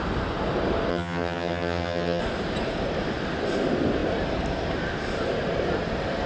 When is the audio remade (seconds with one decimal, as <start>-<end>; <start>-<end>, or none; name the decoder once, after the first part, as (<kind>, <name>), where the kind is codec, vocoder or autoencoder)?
0.9-2.2 (vocoder, HiFi-GAN)